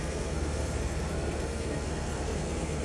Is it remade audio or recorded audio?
remade